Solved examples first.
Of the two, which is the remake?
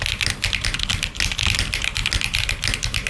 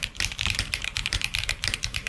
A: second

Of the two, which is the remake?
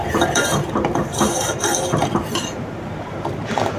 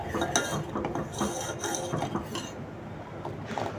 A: first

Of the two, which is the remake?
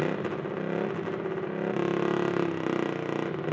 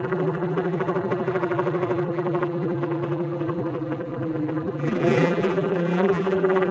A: second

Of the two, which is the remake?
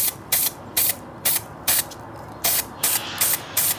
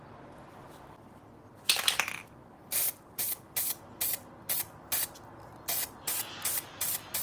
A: first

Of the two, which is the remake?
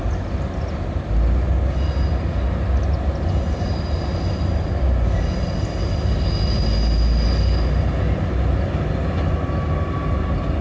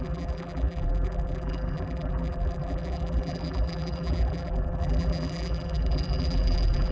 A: second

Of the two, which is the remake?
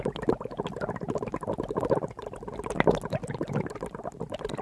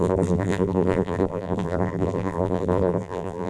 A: second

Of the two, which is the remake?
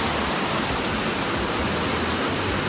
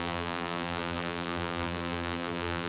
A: second